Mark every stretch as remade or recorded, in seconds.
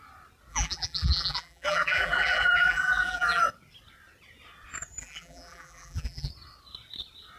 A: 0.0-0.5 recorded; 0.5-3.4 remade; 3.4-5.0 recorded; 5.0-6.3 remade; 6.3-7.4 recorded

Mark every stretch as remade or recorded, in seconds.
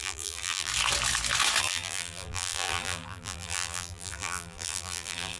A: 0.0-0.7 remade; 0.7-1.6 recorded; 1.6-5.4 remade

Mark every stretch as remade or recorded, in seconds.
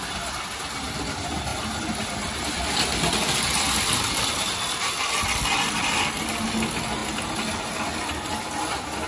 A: 0.0-9.1 recorded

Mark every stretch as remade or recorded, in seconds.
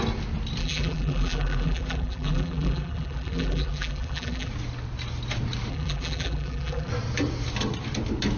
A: 0.0-0.6 recorded; 0.6-4.5 remade; 4.5-5.7 recorded; 5.7-6.9 remade; 6.9-8.4 recorded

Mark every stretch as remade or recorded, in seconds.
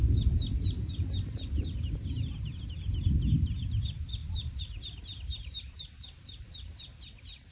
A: 0.0-4.2 recorded; 4.2-7.0 remade; 7.0-7.5 recorded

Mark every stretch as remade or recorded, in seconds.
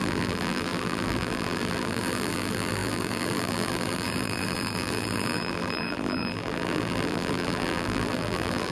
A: 0.0-8.7 remade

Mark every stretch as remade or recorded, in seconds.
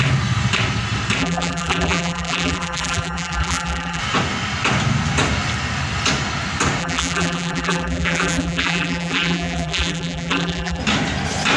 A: 0.0-1.2 recorded; 1.2-4.0 remade; 4.0-6.8 recorded; 6.8-10.8 remade; 10.8-11.6 recorded